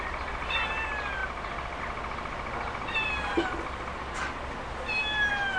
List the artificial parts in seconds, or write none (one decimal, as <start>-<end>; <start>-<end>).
1.2-1.8